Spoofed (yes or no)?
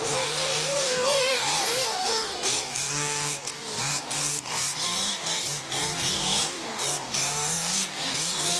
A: yes